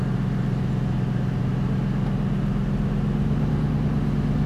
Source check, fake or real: real